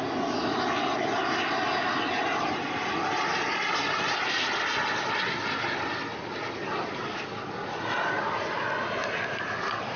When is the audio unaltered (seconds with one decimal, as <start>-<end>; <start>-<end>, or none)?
0.0-10.0